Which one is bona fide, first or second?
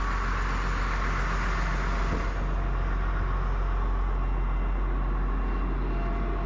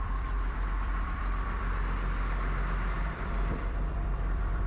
first